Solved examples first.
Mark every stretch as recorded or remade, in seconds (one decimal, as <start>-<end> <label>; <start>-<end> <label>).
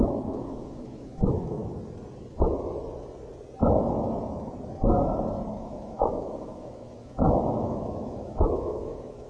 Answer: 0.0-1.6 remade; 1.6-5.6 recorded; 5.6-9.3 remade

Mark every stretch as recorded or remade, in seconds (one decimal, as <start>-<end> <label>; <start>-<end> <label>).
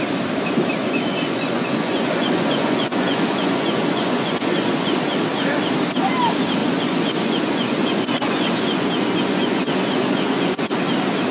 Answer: 0.0-0.8 recorded; 0.8-5.0 remade; 5.0-6.6 recorded; 6.6-10.7 remade; 10.7-11.3 recorded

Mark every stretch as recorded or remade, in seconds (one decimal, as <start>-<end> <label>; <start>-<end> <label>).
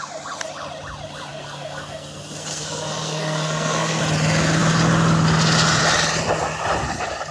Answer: 0.0-1.3 recorded; 1.3-4.0 remade; 4.0-7.3 recorded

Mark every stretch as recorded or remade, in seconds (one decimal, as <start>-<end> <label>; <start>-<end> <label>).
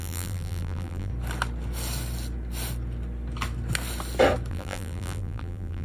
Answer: 0.0-1.1 remade; 1.1-4.5 recorded; 4.5-5.8 remade